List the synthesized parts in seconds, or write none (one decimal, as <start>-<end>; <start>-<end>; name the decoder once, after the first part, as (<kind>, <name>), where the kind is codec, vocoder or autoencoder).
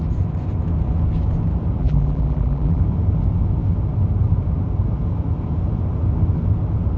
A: 1.8-2.8 (vocoder, BigVGAN v2)